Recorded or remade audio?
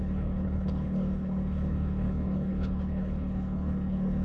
remade